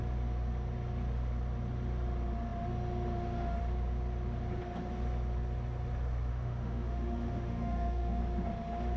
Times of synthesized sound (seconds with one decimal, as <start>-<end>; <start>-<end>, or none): 6.3-8.2